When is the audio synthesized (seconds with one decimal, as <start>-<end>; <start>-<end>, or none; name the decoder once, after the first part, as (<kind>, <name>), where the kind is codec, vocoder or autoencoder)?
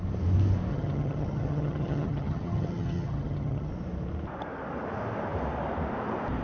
0.7-3.7 (vocoder, HiFi-GAN)